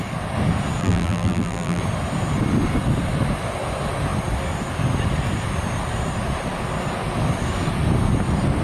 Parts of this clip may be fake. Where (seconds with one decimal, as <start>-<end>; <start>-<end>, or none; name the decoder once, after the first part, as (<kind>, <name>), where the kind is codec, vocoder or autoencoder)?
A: 0.8-1.8 (vocoder, BigVGAN v2)